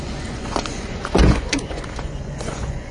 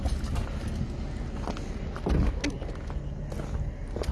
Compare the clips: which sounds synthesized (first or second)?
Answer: first